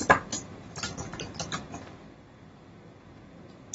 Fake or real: real